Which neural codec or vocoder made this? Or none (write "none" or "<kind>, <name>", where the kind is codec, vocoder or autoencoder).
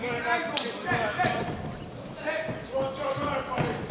none